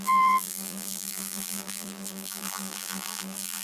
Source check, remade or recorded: remade